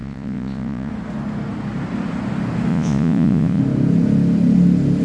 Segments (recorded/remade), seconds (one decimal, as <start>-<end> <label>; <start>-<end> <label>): 0.0-0.9 remade; 0.9-2.7 recorded; 2.7-3.6 remade; 3.6-5.0 recorded